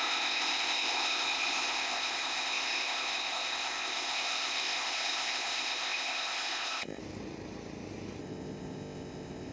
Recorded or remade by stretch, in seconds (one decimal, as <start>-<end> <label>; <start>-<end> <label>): 0.0-7.0 remade; 7.0-8.2 recorded; 8.2-9.5 remade

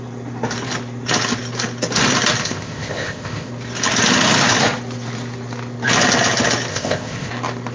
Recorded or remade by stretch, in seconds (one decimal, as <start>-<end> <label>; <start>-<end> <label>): 0.0-2.4 recorded; 2.4-3.5 remade; 3.5-6.7 recorded; 6.7-7.3 remade; 7.3-7.7 recorded

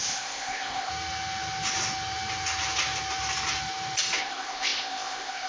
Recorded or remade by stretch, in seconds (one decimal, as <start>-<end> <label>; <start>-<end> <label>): 0.0-0.9 remade; 0.9-4.2 recorded; 4.2-5.5 remade

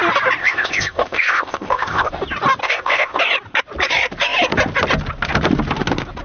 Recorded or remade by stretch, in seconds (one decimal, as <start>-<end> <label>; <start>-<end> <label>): 0.0-0.4 recorded; 0.4-2.1 remade; 2.1-2.6 recorded; 2.6-3.2 remade; 3.2-6.2 recorded

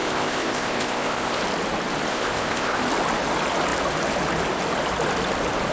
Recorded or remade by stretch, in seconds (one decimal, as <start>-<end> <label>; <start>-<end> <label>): 0.0-1.4 remade; 1.4-2.1 recorded; 2.1-2.8 remade; 2.8-5.7 recorded

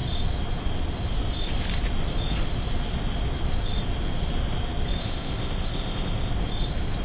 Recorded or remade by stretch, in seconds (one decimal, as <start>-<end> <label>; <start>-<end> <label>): 0.0-5.0 recorded; 5.0-6.3 remade; 6.3-7.0 recorded

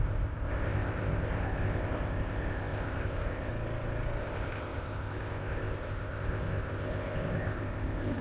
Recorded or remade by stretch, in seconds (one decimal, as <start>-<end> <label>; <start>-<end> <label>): 0.0-3.5 remade; 3.5-4.2 recorded; 4.2-8.2 remade